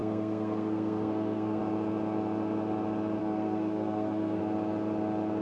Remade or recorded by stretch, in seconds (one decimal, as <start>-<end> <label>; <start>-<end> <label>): 0.0-1.6 remade; 1.6-3.2 recorded; 3.2-4.4 remade; 4.4-5.4 recorded